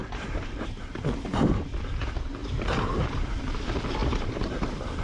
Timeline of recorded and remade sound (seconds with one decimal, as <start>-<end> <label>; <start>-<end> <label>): 0.0-1.4 remade; 1.4-2.4 recorded; 2.4-3.4 remade; 3.4-4.0 recorded; 4.0-4.6 remade; 4.6-5.0 recorded